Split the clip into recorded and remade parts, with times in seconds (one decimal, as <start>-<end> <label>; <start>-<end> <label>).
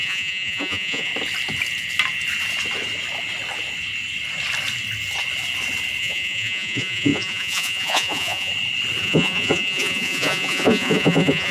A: 0.0-1.1 remade; 1.1-6.0 recorded; 6.0-8.5 remade; 8.5-9.0 recorded; 9.0-11.5 remade